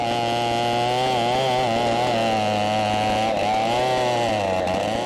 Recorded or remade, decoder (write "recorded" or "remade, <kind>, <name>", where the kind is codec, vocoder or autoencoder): recorded